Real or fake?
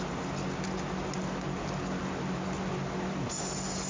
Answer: real